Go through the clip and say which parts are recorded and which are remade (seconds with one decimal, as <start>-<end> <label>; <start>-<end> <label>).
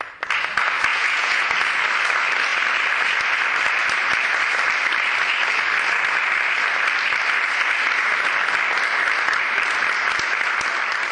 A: 0.0-0.9 recorded; 0.9-1.5 remade; 1.5-11.1 recorded